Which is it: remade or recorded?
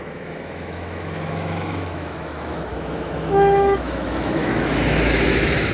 remade